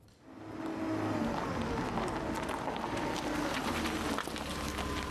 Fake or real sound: real